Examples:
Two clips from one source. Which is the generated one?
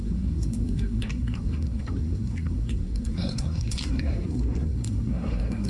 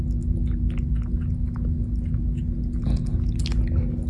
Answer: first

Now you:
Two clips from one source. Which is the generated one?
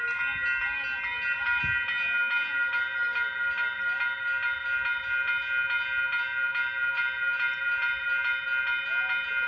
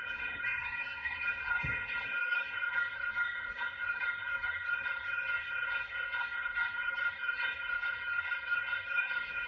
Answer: second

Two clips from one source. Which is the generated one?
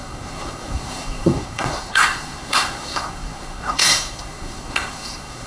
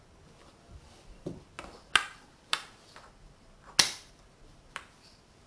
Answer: first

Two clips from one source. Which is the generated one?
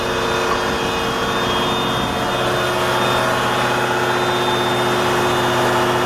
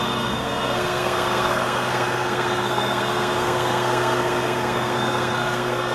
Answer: second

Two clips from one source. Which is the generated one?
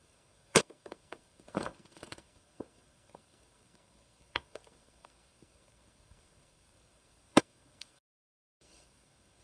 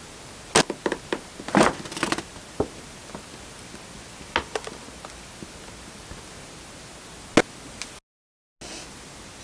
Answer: first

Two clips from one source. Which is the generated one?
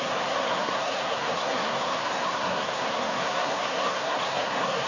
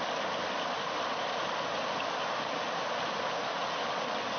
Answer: first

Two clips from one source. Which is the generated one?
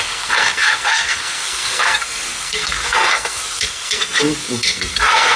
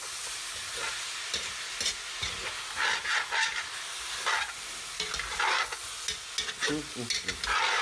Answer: first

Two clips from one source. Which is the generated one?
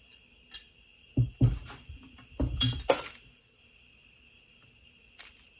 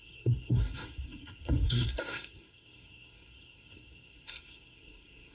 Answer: second